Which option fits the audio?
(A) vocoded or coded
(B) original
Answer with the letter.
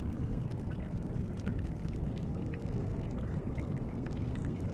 A